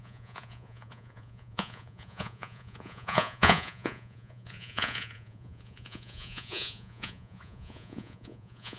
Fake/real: fake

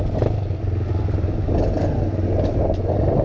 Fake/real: real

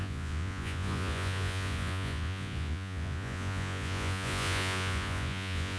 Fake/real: fake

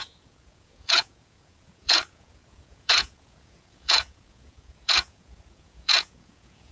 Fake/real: fake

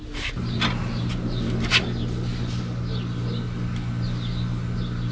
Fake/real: real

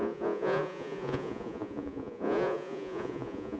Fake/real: fake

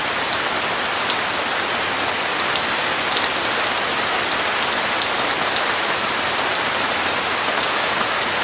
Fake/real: real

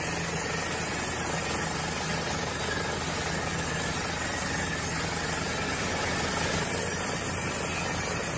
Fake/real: real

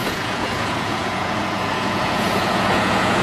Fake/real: fake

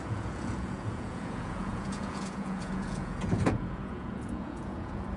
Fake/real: fake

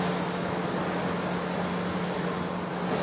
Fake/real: real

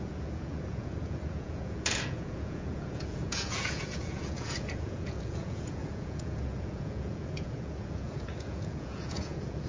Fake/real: fake